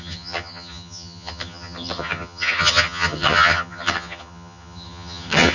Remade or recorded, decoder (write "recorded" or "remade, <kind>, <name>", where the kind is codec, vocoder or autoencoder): remade, vocoder, HiFi-GAN